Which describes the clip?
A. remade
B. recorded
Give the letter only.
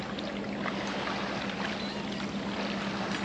B